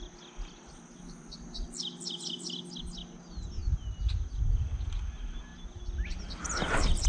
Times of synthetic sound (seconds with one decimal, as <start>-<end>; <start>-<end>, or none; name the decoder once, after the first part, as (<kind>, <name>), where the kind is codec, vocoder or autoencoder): none